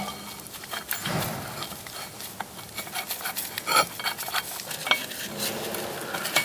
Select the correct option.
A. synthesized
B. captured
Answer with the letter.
B